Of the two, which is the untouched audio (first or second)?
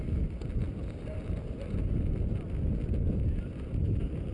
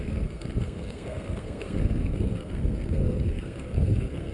first